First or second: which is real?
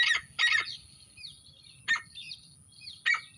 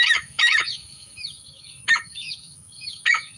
first